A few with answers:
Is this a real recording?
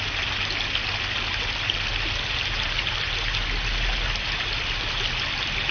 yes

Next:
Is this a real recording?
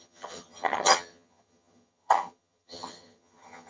no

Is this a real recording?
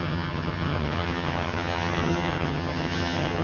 no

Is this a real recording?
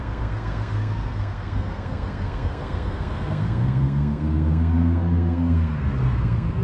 no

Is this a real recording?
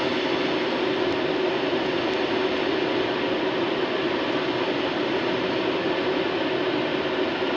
yes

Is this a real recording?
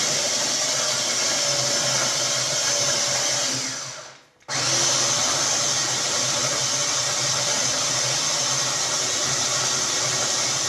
yes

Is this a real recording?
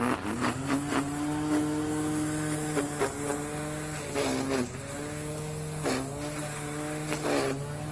yes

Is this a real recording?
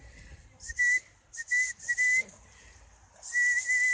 yes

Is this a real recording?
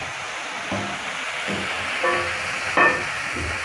yes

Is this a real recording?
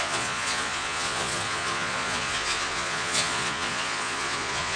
no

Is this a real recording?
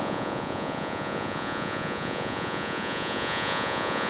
no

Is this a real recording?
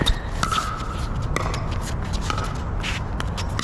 yes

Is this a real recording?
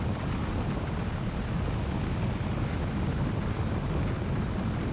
yes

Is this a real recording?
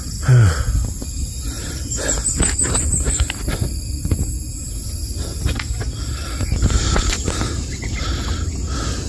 yes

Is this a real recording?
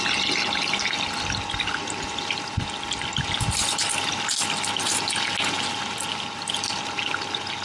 yes